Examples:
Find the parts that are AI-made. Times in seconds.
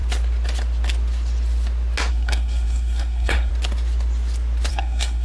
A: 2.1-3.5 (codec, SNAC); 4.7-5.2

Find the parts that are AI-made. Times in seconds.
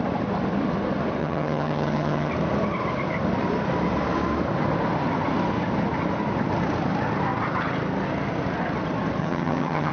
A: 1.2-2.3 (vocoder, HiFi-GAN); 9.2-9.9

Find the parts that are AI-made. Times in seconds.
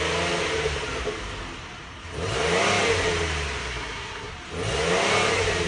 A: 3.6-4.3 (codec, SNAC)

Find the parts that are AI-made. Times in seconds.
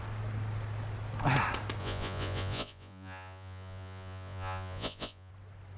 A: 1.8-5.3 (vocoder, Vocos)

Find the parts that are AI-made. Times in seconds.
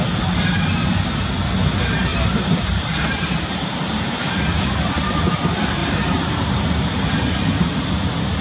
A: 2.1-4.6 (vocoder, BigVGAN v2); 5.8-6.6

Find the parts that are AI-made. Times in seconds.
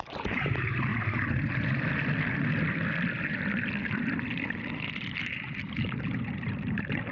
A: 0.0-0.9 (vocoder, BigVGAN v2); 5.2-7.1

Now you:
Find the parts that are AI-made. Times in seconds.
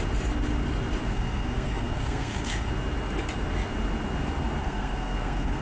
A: 1.1-2.7 (codec, SNAC); 4.6-5.6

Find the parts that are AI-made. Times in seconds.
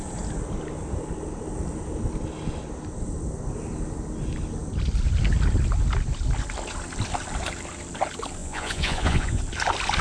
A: 8.4-9.4 (vocoder, Vocos)